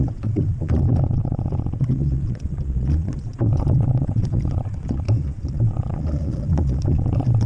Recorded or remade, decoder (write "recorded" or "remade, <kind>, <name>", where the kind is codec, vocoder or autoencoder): remade, vocoder, Vocos